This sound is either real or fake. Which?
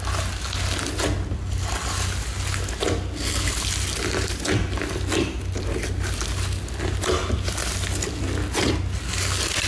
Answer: real